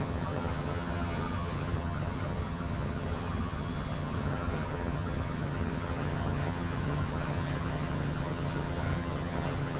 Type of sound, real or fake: fake